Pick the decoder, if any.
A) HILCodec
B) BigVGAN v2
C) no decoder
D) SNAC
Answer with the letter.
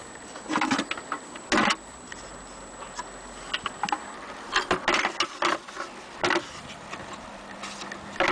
C